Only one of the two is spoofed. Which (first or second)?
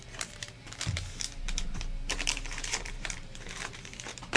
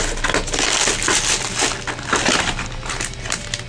first